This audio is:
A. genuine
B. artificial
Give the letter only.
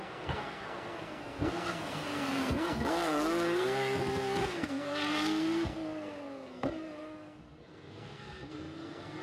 B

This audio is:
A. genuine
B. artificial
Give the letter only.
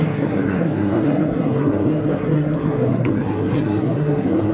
B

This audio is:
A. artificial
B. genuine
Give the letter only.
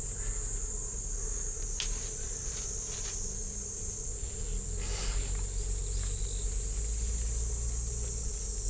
B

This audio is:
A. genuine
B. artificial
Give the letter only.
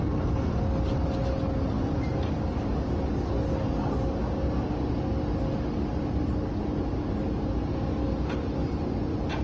A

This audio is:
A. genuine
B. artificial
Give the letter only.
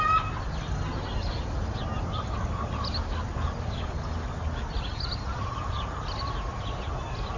A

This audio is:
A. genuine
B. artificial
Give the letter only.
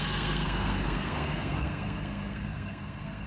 B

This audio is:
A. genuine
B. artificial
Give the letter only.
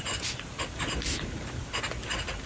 A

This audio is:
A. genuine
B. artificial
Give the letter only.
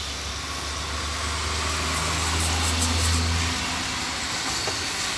A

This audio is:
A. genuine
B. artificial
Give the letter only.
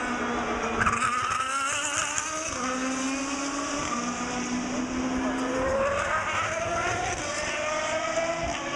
A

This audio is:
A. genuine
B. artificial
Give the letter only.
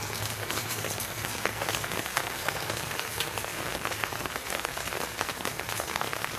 B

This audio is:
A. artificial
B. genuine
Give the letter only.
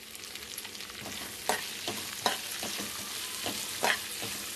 B